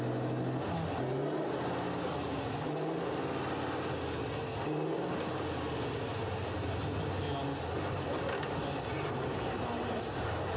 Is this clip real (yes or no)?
yes